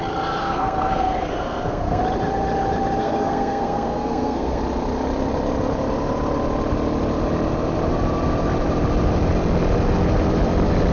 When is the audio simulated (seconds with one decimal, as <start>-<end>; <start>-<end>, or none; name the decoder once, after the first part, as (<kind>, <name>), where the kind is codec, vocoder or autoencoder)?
0.4-2.0 (codec, SNAC); 3.0-4.6